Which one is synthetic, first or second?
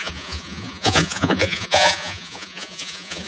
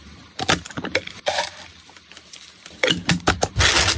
first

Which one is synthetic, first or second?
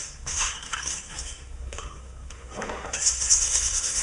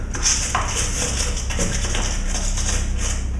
first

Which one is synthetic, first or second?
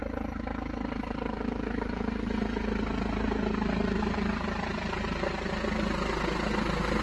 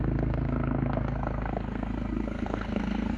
second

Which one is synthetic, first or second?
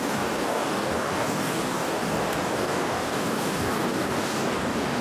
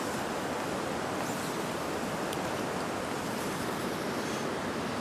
first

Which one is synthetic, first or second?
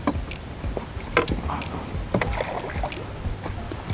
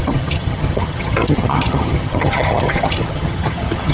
second